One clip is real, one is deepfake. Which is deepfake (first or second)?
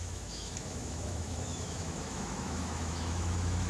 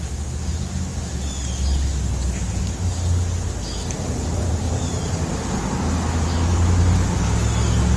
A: first